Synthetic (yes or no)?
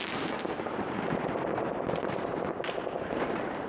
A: no